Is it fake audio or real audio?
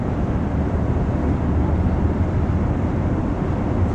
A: real